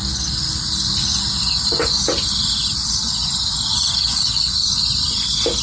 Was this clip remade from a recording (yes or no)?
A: no